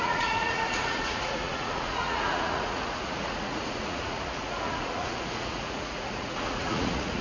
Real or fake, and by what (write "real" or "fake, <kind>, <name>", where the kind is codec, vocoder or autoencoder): fake, vocoder, Vocos